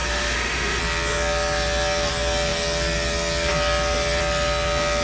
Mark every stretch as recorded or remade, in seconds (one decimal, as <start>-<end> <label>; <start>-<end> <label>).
0.0-0.8 remade; 0.8-5.0 recorded